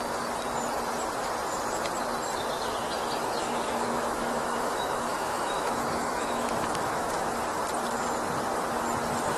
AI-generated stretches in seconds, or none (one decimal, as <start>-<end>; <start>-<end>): 3.4-7.3